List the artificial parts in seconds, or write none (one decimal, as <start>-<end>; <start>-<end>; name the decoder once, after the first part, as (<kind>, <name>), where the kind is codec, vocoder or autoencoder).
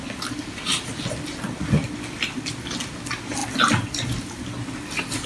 none